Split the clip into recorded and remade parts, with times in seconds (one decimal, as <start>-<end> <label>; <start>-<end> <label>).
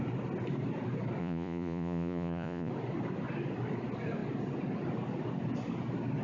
0.0-1.2 recorded; 1.2-2.7 remade; 2.7-6.2 recorded